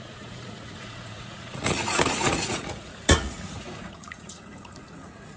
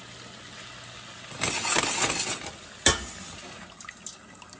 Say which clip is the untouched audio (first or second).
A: second